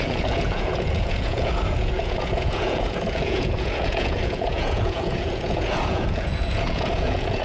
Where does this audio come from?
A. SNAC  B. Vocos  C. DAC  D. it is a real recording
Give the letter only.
B